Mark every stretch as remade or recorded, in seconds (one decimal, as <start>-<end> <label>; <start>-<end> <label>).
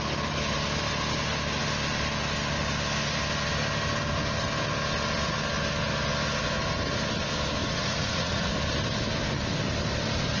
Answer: 0.0-7.6 recorded; 7.6-8.5 remade; 8.5-10.4 recorded